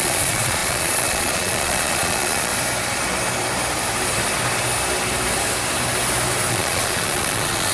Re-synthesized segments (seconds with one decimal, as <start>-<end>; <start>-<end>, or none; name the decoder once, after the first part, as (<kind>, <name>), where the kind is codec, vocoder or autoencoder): 0.0-2.5 (vocoder, Vocos); 6.5-7.7